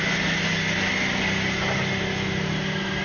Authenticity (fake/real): real